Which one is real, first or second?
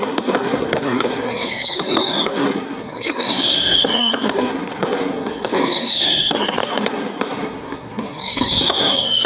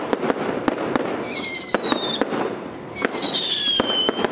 second